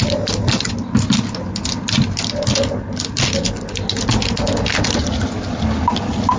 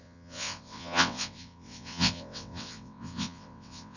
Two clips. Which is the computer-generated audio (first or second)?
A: second